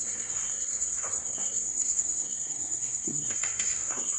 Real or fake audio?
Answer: fake